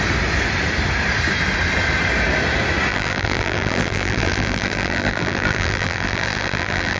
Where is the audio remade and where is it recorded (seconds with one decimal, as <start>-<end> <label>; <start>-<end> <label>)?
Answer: 0.0-2.9 recorded; 2.9-7.0 remade